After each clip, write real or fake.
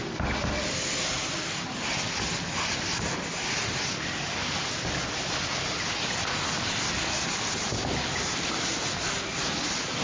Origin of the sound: real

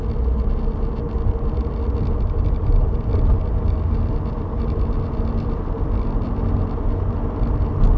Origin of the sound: real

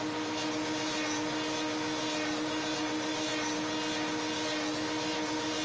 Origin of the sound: real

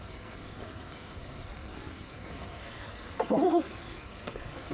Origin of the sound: fake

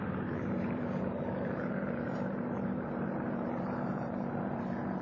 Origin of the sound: fake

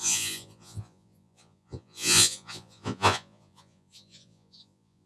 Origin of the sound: fake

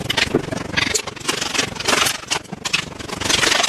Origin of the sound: real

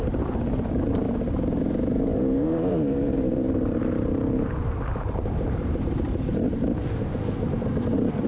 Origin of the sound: fake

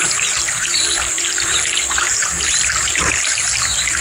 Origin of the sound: fake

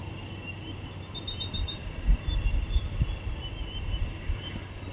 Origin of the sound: real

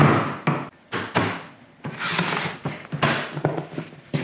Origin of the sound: real